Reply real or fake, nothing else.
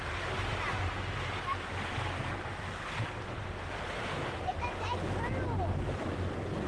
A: real